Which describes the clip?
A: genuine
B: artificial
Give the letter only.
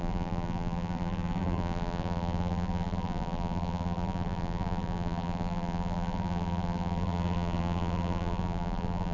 B